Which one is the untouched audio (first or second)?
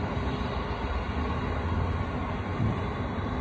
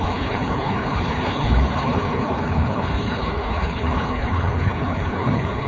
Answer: first